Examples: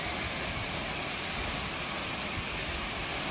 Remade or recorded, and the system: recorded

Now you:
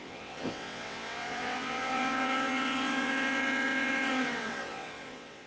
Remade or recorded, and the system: remade, vocoder, WaveNeXt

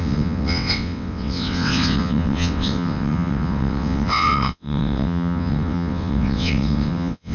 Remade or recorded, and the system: remade, vocoder, WaveNeXt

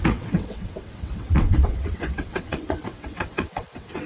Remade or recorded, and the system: remade, vocoder, WaveNeXt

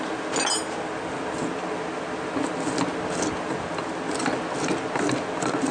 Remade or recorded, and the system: recorded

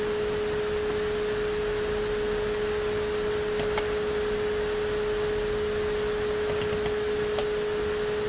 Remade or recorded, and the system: recorded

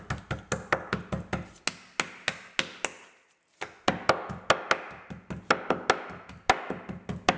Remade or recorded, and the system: recorded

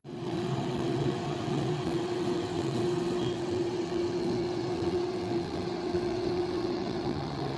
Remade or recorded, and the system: remade, vocoder, WaveNeXt